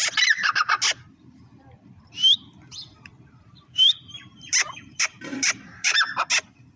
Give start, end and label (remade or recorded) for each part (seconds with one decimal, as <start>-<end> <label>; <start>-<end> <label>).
0.0-2.9 recorded; 2.9-6.0 remade; 6.0-6.8 recorded